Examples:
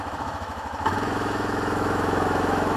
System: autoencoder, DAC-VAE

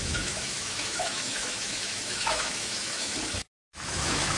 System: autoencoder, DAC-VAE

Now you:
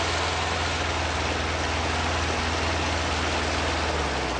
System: none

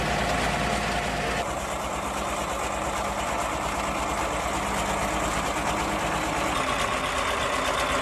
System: none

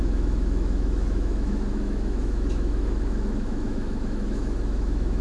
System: autoencoder, DAC-VAE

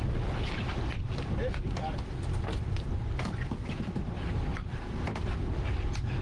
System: none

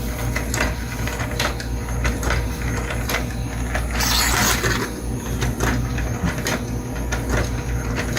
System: none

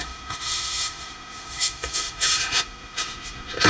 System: autoencoder, DAC-VAE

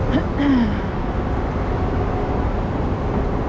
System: none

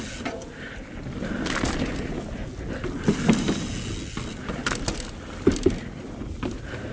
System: none